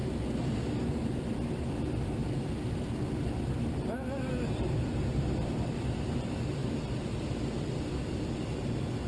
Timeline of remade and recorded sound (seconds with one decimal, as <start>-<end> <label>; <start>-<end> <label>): 0.0-1.7 recorded; 1.7-2.2 remade; 2.2-5.2 recorded; 5.2-9.1 remade